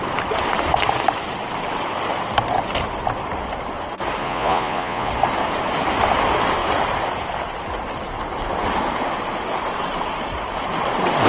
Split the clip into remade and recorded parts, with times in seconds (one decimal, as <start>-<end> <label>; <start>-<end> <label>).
0.0-4.2 recorded; 4.2-5.1 remade; 5.1-11.3 recorded

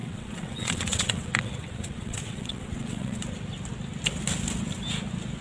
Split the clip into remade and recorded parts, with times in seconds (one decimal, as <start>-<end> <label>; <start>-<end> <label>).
0.0-3.2 remade; 3.2-5.4 recorded

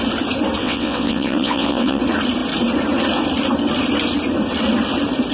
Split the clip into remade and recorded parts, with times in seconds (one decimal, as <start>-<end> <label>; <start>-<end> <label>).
0.0-0.6 recorded; 0.6-2.0 remade; 2.0-5.3 recorded

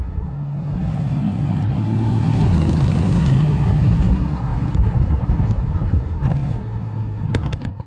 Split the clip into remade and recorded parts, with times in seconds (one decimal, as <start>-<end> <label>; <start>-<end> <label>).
0.0-7.9 remade

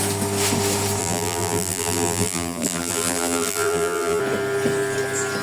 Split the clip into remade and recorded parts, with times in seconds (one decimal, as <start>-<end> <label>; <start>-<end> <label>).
0.0-1.0 recorded; 1.0-4.2 remade; 4.2-5.4 recorded

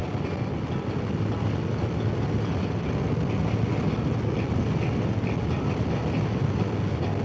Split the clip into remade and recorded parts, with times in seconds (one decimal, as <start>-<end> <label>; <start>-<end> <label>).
0.0-7.2 recorded

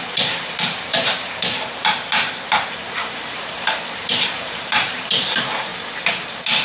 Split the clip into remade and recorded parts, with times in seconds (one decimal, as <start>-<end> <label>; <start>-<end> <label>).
0.0-5.7 remade; 5.7-6.6 recorded

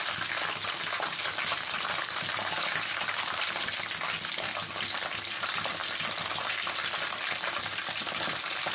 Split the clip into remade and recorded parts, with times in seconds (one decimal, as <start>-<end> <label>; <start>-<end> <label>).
0.0-1.5 recorded; 1.5-3.6 remade; 3.6-8.7 recorded